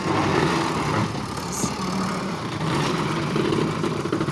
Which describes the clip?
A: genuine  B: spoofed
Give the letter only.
B